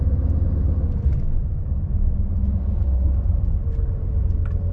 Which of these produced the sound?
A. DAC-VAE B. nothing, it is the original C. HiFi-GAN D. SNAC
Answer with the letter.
B